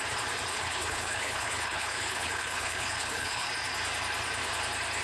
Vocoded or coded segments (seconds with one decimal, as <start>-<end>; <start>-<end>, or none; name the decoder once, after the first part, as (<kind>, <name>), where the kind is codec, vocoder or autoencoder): 0.5-3.5 (codec, HILCodec)

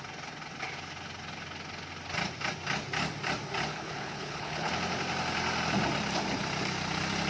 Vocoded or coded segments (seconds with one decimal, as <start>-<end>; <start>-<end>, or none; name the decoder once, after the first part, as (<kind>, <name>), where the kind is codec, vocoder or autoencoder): 3.7-4.7 (codec, HILCodec)

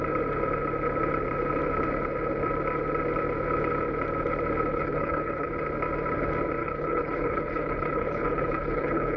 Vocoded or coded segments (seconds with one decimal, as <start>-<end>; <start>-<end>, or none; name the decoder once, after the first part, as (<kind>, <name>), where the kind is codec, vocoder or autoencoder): 4.7-5.5 (codec, HILCodec); 6.6-9.2

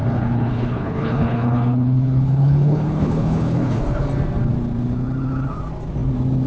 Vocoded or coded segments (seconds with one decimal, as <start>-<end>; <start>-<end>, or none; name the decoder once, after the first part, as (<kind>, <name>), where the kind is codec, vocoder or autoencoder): 0.0-3.8 (codec, HILCodec)

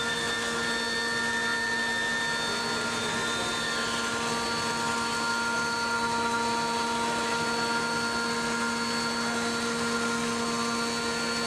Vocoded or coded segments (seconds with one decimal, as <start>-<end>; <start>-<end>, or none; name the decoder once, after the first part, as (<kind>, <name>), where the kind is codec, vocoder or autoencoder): none

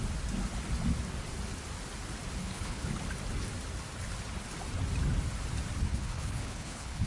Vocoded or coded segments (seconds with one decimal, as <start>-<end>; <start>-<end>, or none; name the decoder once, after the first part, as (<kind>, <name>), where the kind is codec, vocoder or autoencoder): 2.4-2.9 (codec, HILCodec); 5.9-7.1

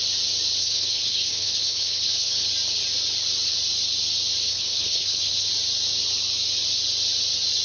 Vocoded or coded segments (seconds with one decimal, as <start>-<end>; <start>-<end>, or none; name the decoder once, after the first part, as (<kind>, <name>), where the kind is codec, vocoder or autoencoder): 0.6-2.5 (codec, HILCodec); 4.5-5.5

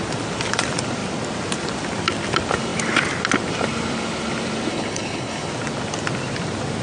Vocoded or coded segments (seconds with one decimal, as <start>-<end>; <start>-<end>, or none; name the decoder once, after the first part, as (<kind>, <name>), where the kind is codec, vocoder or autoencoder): 4.7-5.5 (codec, HILCodec)